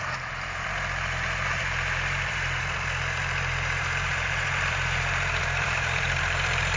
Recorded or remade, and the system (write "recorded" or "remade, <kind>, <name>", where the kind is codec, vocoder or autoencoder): remade, vocoder, BigVGAN v2